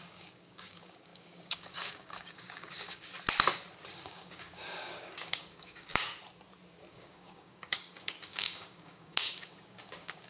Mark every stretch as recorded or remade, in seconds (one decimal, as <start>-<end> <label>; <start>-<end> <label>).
0.0-3.1 remade; 3.1-3.9 recorded; 3.9-6.1 remade; 6.1-6.9 recorded; 6.9-10.3 remade

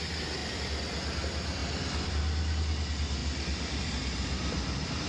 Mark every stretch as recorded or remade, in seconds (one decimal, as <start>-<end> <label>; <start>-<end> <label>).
0.0-0.4 recorded; 0.4-1.2 remade; 1.2-1.6 recorded; 1.6-2.2 remade; 2.2-3.2 recorded; 3.2-3.8 remade; 3.8-5.1 recorded